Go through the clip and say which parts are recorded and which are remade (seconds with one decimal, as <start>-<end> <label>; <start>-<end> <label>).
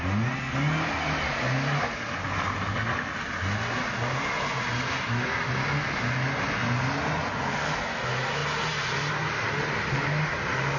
0.0-10.8 recorded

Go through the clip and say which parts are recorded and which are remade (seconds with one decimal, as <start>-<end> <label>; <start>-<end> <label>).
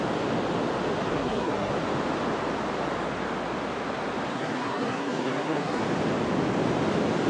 0.0-1.1 recorded; 1.1-1.7 remade; 1.7-4.3 recorded; 4.3-5.8 remade; 5.8-7.3 recorded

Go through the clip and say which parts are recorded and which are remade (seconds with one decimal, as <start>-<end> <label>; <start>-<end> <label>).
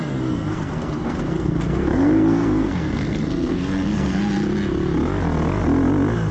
0.0-4.2 remade; 4.2-6.3 recorded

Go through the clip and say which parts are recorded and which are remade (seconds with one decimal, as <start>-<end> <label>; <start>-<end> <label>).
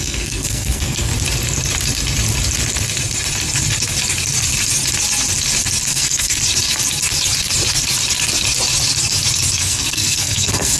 0.0-1.1 remade; 1.1-5.9 recorded; 5.9-6.4 remade; 6.4-9.6 recorded; 9.6-10.8 remade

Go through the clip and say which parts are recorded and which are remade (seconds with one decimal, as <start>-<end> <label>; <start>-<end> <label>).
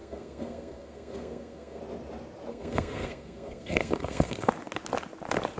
0.0-1.8 remade; 1.8-2.5 recorded; 2.5-4.5 remade; 4.5-5.6 recorded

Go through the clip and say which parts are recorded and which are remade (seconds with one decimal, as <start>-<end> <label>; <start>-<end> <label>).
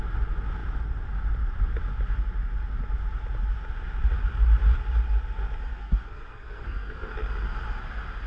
0.0-5.7 recorded; 5.7-7.1 remade; 7.1-8.3 recorded